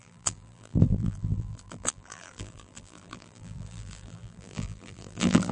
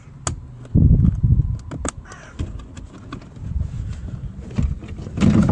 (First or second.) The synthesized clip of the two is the first